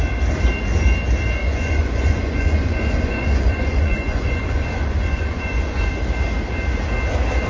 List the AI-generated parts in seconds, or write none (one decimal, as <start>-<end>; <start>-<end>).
1.4-5.9